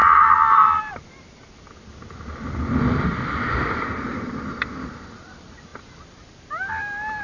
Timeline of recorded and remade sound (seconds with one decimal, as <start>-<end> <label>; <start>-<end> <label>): 0.0-1.1 remade; 1.1-4.1 recorded; 4.1-4.7 remade; 4.7-7.2 recorded